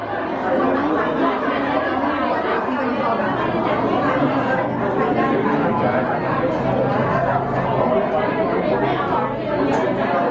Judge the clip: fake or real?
real